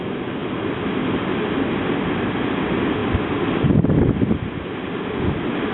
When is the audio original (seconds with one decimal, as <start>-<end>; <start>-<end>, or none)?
0.0-0.4; 1.1-5.7